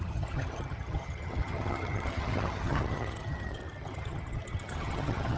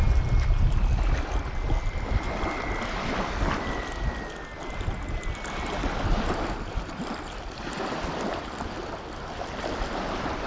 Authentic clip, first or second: second